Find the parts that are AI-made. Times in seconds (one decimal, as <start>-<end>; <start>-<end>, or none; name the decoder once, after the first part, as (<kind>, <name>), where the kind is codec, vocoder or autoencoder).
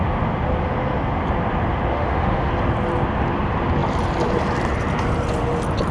1.9-2.5 (autoencoder, DAC-VAE)